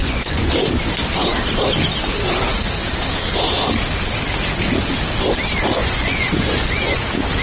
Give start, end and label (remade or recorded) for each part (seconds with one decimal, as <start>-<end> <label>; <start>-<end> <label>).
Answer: 0.0-0.5 remade; 0.5-5.8 recorded; 5.8-7.0 remade; 7.0-7.4 recorded